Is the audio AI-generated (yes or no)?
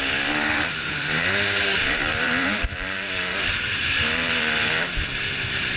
yes